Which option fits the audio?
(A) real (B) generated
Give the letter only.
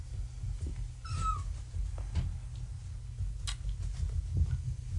A